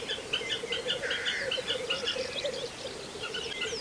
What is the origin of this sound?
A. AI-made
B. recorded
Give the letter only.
B